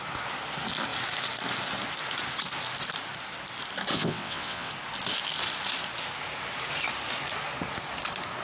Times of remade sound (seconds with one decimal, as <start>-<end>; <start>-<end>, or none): 3.9-4.7

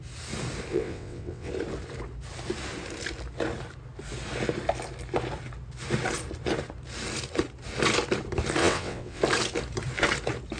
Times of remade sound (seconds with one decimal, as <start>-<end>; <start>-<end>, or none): 0.7-1.5; 8.6-9.2